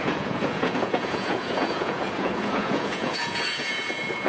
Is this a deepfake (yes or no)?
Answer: yes